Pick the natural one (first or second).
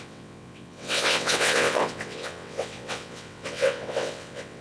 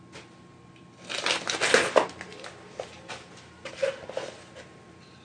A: second